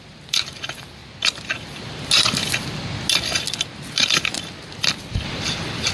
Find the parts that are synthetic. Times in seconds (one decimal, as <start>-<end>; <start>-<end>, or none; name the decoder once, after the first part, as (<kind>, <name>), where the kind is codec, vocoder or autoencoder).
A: 0.0-1.0 (vocoder, BigVGAN v2); 4.5-5.9